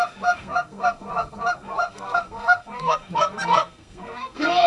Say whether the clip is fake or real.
fake